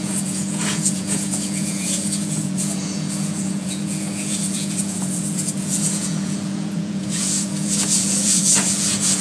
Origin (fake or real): fake